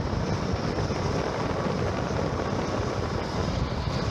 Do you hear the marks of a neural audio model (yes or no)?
no